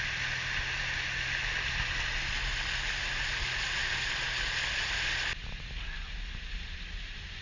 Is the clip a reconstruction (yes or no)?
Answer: no